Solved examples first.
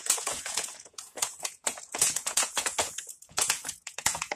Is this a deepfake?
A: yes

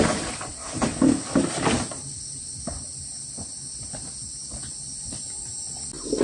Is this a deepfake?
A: no